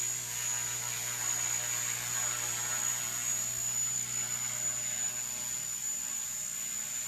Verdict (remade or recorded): recorded